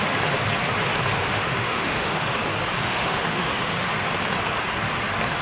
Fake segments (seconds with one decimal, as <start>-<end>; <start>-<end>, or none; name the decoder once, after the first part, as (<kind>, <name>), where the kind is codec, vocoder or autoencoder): 1.2-2.2 (autoencoder, DAC-VAE); 2.8-3.7